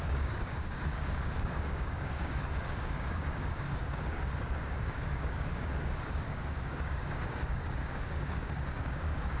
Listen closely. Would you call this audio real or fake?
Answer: fake